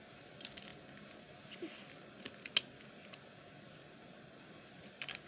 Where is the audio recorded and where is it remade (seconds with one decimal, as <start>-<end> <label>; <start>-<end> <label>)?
0.0-5.3 recorded